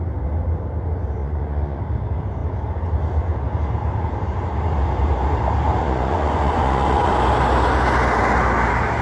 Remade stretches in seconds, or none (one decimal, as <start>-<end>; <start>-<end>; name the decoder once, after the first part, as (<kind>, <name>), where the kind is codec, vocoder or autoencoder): 1.2-1.8 (vocoder, Vocos); 5.8-7.1